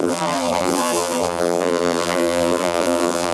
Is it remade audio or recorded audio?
remade